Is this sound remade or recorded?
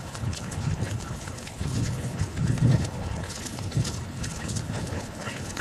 remade